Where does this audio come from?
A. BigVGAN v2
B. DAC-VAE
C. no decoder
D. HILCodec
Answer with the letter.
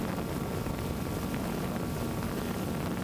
C